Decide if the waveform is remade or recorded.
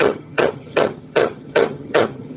remade